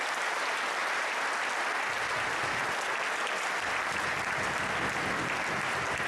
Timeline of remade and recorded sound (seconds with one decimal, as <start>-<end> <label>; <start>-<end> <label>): 0.0-6.1 recorded